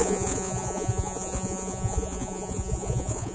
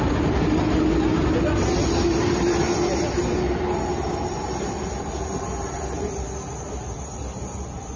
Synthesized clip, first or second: first